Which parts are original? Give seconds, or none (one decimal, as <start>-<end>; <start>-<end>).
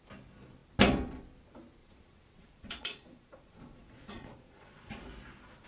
0.0-1.8; 5.0-5.7